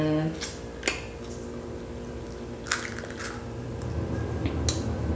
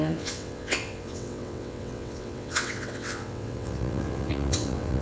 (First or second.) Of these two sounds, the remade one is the second